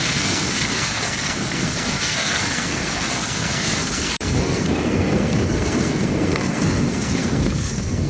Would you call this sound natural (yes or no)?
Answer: no